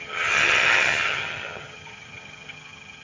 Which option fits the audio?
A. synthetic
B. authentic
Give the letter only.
A